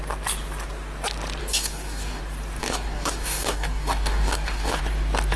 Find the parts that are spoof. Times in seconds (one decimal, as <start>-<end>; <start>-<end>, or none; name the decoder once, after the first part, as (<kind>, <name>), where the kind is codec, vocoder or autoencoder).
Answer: 1.4-2.2 (codec, DAC); 2.6-4.8